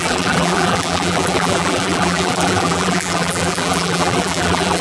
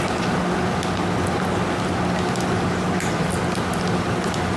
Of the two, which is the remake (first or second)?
first